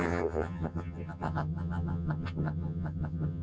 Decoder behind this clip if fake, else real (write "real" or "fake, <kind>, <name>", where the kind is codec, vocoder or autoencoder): fake, vocoder, HiFi-GAN